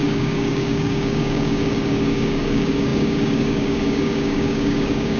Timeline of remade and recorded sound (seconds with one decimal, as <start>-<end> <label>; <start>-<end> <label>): 0.0-5.2 remade